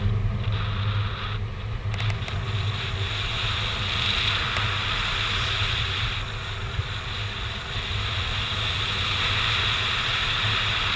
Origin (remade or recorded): recorded